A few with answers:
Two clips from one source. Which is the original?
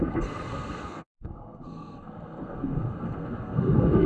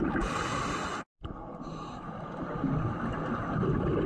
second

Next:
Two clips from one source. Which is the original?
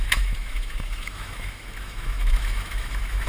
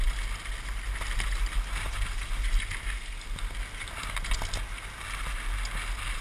second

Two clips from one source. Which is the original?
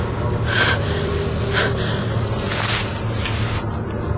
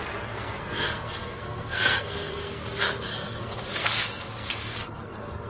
first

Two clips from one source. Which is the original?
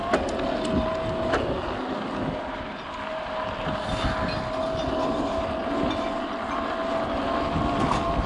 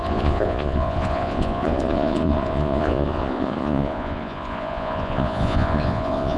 first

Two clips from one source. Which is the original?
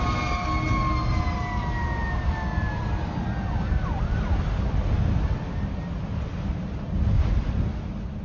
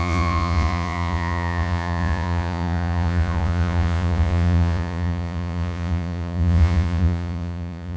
first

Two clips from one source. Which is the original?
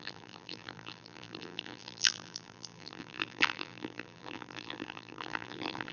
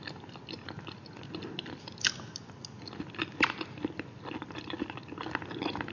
second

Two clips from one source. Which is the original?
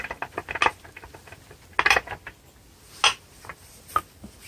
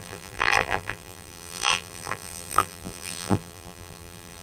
first